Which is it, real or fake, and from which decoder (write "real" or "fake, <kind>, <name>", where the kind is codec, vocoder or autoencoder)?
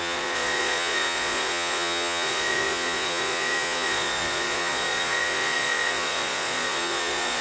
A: fake, vocoder, Vocos